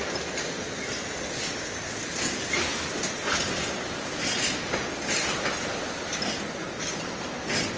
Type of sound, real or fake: real